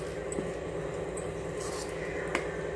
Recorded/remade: recorded